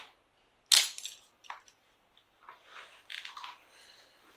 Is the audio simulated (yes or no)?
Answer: no